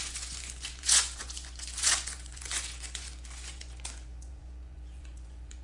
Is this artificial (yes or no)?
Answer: yes